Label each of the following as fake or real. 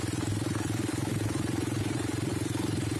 real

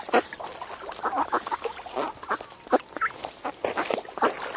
real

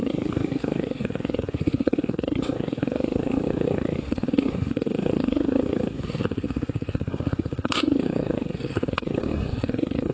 fake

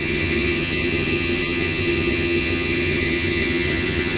fake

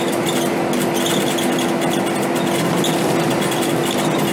real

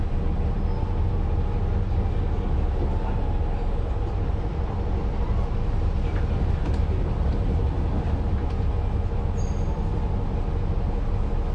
real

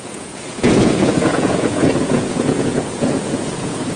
fake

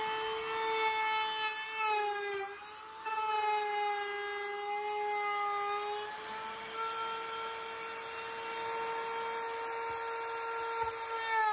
real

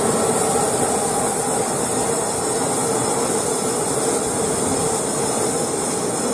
real